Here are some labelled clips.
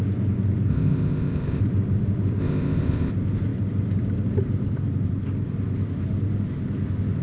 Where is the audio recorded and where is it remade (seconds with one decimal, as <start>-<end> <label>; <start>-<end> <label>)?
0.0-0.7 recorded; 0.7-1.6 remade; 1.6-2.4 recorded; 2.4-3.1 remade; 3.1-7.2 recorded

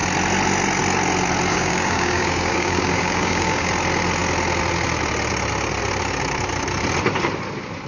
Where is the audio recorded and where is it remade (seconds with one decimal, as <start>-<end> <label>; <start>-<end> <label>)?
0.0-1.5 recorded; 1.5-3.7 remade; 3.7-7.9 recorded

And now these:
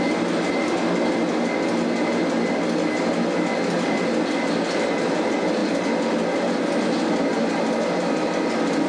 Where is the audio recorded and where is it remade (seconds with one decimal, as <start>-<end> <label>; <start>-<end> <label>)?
0.0-8.9 recorded